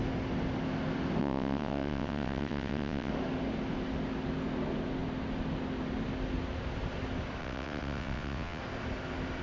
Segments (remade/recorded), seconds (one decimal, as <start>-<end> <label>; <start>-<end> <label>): 0.0-1.2 recorded; 1.2-3.1 remade; 3.1-7.4 recorded; 7.4-8.6 remade; 8.6-9.4 recorded